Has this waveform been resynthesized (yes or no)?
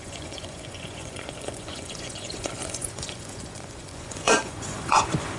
yes